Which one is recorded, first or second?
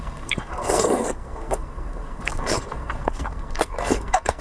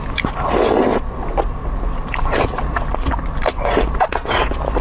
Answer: second